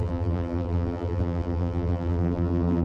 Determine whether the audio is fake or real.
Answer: fake